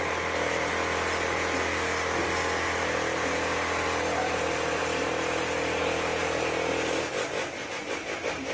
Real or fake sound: real